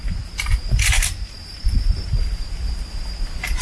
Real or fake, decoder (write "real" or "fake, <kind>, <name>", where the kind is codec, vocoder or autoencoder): real